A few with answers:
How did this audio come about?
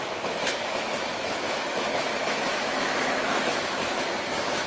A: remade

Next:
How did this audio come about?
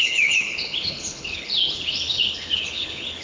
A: remade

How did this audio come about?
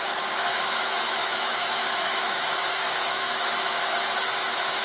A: remade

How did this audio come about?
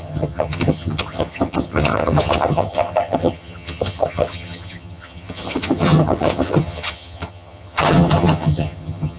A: remade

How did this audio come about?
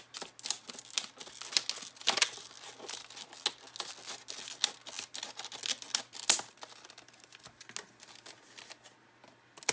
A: recorded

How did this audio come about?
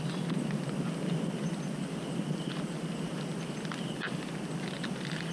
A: recorded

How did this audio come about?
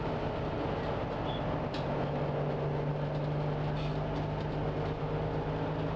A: recorded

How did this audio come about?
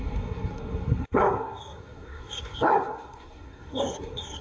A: remade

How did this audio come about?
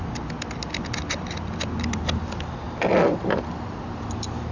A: recorded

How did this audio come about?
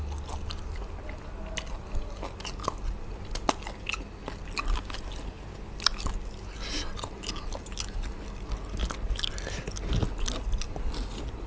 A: recorded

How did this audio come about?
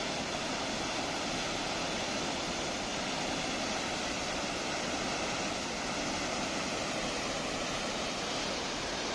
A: recorded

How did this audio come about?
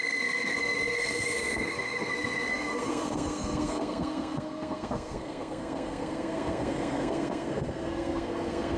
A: remade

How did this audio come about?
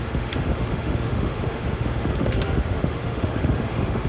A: remade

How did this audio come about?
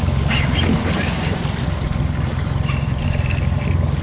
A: recorded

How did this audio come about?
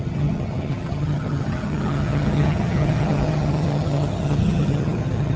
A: remade